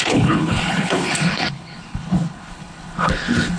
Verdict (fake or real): fake